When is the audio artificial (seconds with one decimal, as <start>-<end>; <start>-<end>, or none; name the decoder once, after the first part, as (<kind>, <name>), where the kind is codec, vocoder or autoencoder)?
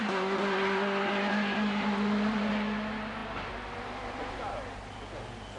none